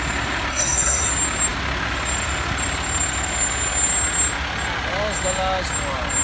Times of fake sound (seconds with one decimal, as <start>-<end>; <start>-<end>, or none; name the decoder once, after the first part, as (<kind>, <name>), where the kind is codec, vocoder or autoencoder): 0.5-1.1 (codec, SNAC)

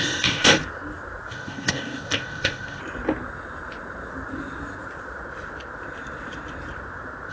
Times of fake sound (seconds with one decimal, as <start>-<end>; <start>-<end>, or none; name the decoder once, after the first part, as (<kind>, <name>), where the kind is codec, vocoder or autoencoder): 0.0-0.6 (codec, ZipCodec); 1.3-2.8